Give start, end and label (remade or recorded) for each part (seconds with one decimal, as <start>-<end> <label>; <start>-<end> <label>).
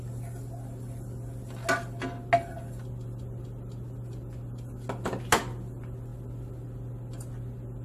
0.0-7.8 recorded